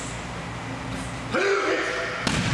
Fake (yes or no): no